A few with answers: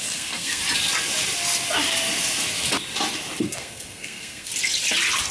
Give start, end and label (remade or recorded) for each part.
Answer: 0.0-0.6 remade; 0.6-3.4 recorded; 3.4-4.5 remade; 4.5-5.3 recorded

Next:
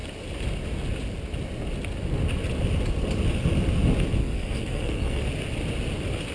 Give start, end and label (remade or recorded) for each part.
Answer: 0.0-4.2 recorded; 4.2-5.2 remade; 5.2-6.3 recorded

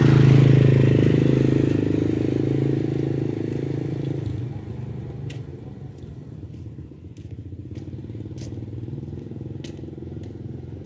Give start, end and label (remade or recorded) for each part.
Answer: 0.0-10.9 recorded

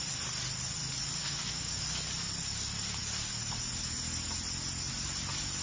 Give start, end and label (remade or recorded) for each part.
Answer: 0.0-1.2 recorded; 1.2-1.8 remade; 1.8-5.6 recorded